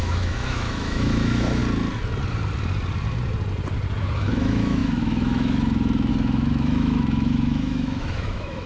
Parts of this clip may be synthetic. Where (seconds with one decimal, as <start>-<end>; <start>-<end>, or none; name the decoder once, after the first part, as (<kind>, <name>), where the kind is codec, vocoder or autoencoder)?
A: 0.0-1.6 (autoencoder, DAC-VAE); 4.0-8.7